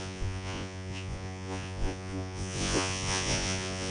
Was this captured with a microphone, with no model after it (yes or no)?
no